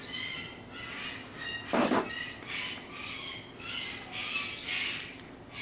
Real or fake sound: real